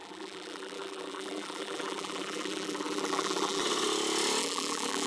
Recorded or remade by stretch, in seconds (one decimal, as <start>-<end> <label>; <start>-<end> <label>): 0.0-3.6 remade; 3.6-4.4 recorded; 4.4-5.1 remade